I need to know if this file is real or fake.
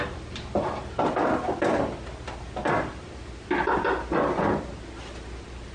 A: real